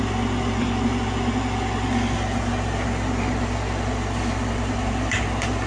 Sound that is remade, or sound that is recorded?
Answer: recorded